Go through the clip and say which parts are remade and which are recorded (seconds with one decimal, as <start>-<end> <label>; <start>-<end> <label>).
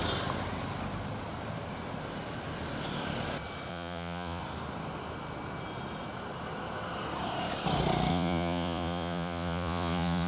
0.0-3.7 recorded; 3.7-4.4 remade; 4.4-8.1 recorded; 8.1-10.3 remade